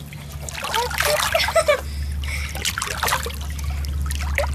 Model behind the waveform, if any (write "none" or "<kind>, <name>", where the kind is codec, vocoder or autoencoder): none